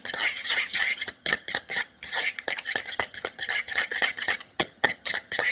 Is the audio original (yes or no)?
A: no